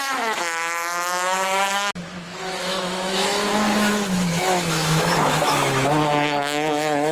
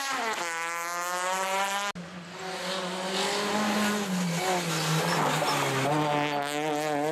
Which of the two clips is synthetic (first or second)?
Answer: first